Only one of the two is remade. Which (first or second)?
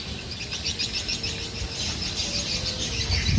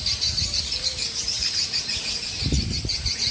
second